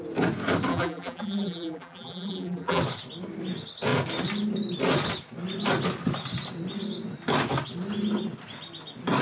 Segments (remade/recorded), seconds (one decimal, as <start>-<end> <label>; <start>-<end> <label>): 0.0-0.7 recorded; 0.7-2.8 remade; 2.8-9.2 recorded